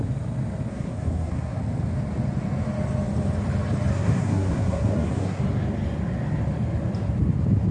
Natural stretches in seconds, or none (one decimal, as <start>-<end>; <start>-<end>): 0.0-0.7; 1.6-3.9; 5.4-7.7

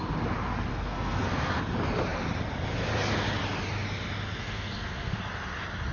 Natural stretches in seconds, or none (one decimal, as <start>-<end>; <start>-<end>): 0.0-0.7; 1.6-4.4; 5.2-5.9

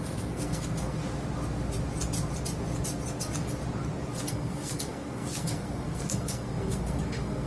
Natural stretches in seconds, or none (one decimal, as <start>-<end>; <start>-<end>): 1.0-4.3

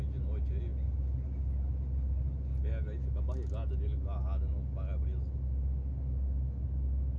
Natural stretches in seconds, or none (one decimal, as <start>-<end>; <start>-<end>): 0.0-7.2